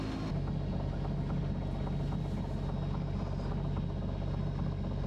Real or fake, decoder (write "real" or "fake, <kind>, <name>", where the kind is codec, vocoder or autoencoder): real